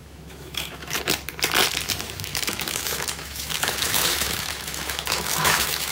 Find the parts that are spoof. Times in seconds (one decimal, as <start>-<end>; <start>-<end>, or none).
0.0-1.0; 2.3-5.9